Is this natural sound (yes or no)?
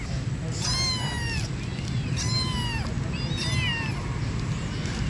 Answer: yes